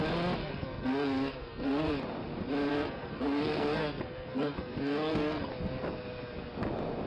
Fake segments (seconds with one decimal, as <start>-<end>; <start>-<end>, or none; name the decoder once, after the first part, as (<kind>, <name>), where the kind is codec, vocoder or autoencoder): 0.4-1.9 (codec, SNAC); 2.7-5.5